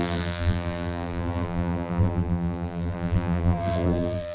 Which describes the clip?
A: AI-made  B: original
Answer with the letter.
A